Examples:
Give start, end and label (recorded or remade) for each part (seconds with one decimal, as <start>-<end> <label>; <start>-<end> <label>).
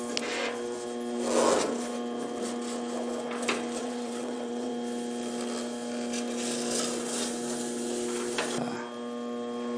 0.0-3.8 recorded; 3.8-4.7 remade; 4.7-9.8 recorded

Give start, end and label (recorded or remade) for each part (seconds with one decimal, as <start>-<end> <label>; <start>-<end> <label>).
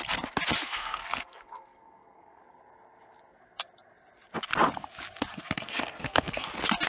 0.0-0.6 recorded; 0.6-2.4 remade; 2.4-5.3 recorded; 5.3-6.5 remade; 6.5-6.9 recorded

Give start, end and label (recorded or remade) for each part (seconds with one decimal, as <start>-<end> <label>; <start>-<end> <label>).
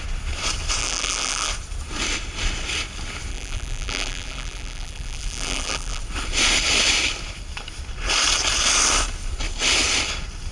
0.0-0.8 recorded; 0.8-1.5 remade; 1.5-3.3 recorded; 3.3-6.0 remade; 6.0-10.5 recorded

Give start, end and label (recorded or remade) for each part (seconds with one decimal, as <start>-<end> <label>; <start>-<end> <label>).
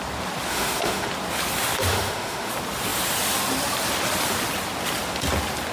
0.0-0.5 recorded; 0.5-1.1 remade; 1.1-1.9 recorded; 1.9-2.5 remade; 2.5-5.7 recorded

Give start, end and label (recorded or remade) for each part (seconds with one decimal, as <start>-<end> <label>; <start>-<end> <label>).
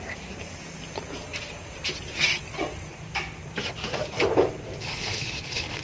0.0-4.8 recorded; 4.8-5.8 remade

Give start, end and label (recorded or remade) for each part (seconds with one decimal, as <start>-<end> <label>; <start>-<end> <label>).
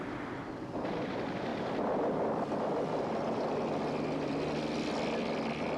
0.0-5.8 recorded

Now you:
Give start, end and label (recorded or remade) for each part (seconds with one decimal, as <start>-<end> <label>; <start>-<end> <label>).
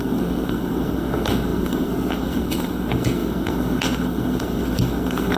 0.0-5.4 remade